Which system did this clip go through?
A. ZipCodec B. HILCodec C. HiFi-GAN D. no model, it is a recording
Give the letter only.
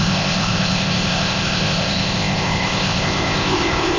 A